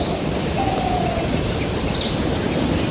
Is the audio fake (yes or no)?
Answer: no